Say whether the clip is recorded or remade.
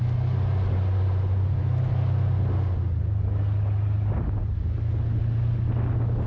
recorded